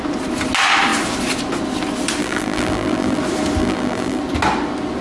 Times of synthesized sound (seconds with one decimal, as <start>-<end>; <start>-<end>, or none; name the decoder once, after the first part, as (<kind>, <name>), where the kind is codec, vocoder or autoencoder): 2.2-3.2 (vocoder, BigVGAN v2); 3.6-4.2